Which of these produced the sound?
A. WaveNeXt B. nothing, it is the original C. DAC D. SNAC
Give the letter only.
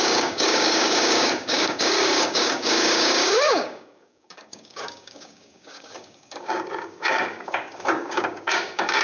C